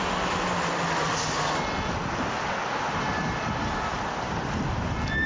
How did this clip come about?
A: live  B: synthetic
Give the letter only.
A